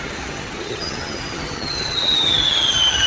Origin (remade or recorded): remade